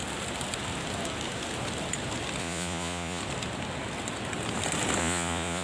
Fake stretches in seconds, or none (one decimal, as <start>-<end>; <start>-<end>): 2.4-3.2; 5.0-5.6